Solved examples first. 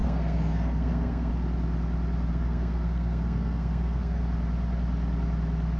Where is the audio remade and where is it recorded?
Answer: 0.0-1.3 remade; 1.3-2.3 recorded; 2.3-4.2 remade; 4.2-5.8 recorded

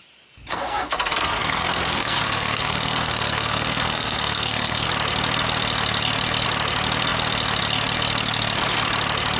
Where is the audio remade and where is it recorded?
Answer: 0.0-0.5 recorded; 0.5-4.9 remade; 4.9-9.4 recorded

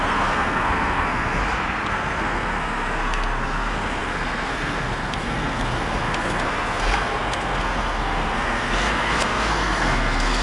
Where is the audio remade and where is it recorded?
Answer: 0.0-1.4 remade; 1.4-1.9 recorded; 1.9-10.4 remade

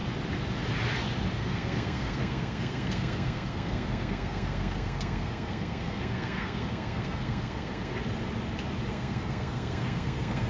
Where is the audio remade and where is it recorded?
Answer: 0.0-1.3 recorded; 1.3-7.9 remade; 7.9-8.9 recorded; 8.9-10.5 remade